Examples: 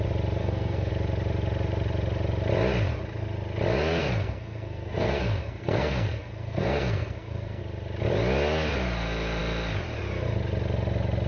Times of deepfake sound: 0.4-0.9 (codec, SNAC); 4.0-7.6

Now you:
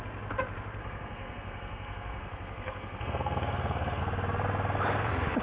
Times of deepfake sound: 0.8-4.0 (codec, SNAC)

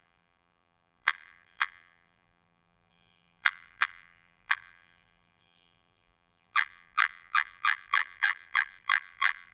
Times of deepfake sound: 0.0-9.5 (vocoder, BigVGAN v2)

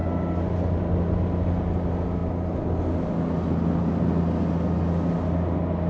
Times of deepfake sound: none

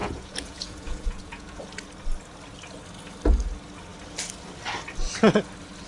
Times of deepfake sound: 0.0-1.6 (vocoder, Vocos)

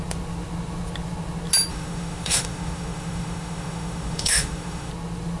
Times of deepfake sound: 1.7-4.9 (autoencoder, DAC-VAE)